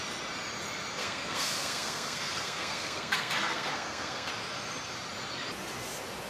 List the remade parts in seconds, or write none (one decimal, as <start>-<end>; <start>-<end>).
1.0-4.3